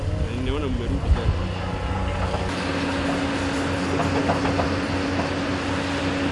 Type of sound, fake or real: real